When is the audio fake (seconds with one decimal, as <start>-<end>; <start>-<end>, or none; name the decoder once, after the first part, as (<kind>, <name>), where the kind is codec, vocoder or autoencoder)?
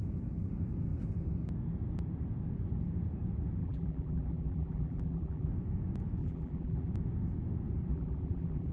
3.6-5.5 (vocoder, BigVGAN v2); 6.2-6.9; 7.9-8.7